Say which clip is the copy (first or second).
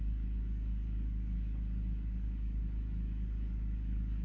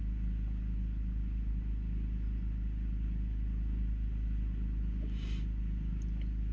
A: first